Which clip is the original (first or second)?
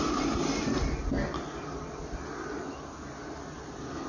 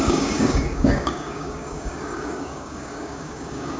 first